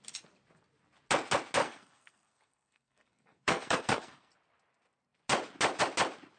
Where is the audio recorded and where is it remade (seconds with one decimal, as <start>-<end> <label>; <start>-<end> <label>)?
0.0-1.6 recorded; 1.6-4.3 remade; 4.3-6.4 recorded